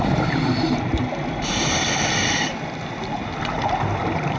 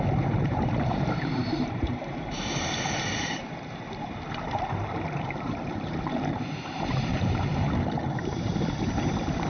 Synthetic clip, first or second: second